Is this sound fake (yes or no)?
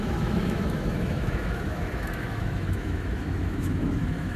yes